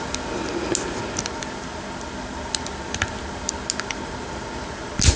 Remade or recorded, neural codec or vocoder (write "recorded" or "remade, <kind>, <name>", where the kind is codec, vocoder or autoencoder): recorded